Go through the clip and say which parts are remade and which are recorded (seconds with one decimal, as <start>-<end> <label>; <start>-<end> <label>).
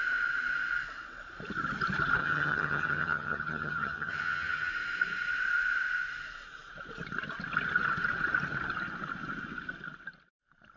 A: 0.0-2.2 recorded; 2.2-4.7 remade; 4.7-10.8 recorded